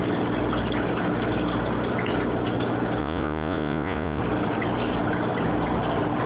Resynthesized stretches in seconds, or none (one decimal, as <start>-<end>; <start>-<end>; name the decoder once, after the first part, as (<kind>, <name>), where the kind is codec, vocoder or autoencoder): 3.0-4.2 (vocoder, Vocos)